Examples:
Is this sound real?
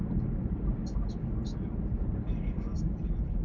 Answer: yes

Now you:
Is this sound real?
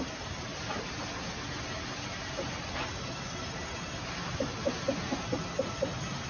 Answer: yes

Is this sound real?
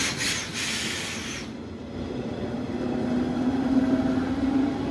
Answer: yes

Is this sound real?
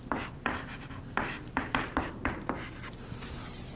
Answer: yes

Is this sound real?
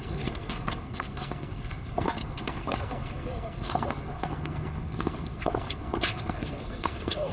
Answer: no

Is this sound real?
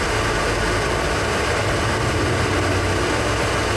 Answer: yes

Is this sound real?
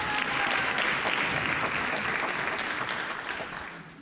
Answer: yes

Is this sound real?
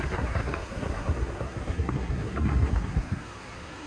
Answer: no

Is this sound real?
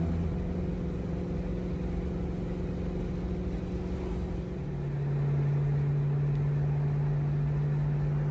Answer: yes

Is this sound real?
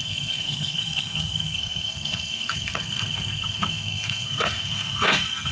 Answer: no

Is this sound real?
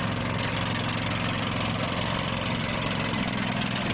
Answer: yes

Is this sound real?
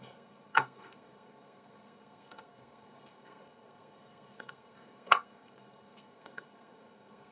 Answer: no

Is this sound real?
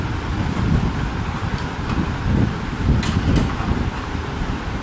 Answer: yes